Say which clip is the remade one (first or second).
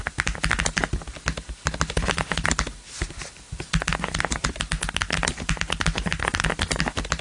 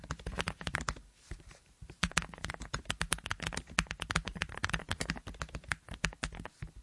second